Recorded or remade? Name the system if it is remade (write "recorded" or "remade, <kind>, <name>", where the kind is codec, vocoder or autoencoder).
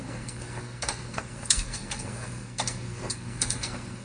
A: remade, codec, SNAC